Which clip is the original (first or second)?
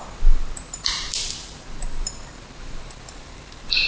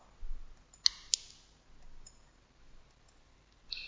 second